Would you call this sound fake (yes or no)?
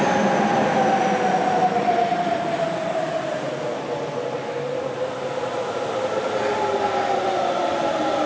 no